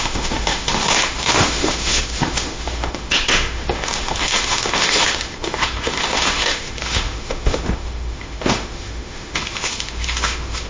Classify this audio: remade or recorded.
remade